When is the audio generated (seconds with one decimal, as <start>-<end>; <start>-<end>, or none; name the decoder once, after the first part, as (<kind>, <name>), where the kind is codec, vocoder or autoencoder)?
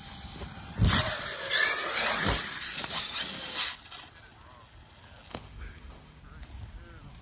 5.3-6.2 (autoencoder, DAC-VAE)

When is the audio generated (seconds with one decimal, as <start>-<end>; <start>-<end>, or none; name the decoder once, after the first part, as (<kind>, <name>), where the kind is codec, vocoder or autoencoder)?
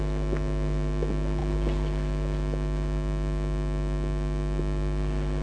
none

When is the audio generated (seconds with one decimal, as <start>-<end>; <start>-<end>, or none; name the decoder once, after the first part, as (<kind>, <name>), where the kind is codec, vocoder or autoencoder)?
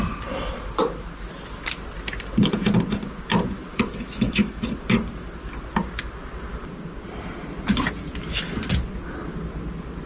3.7-4.6 (autoencoder, DAC-VAE)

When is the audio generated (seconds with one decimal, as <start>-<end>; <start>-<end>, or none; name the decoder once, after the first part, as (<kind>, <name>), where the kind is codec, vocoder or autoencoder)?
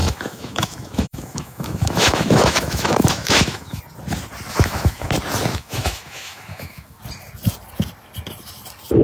0.0-3.8 (autoencoder, DAC-VAE); 4.5-5.1; 5.5-7.0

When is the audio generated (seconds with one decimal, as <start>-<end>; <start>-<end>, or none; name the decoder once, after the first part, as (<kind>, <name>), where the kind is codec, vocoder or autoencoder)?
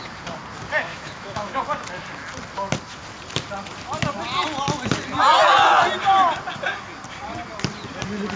0.9-1.6 (autoencoder, DAC-VAE)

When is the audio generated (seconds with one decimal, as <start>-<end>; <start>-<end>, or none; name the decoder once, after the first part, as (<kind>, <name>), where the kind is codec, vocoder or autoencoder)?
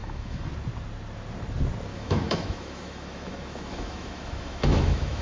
0.0-0.5 (autoencoder, DAC-VAE); 1.9-5.2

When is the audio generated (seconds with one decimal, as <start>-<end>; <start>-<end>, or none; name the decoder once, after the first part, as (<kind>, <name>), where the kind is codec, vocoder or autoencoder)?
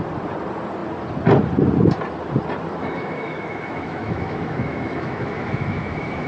2.8-6.3 (autoencoder, DAC-VAE)